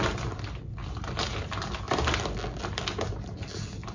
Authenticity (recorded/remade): recorded